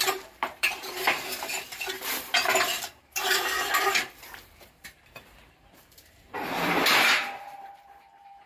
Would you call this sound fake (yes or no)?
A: yes